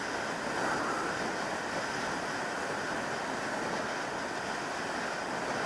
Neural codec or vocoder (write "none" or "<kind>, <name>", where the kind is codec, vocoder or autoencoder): none